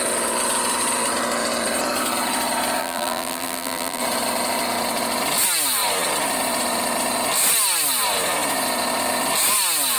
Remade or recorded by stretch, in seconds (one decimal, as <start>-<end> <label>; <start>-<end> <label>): 0.0-2.8 recorded; 2.8-4.0 remade; 4.0-10.0 recorded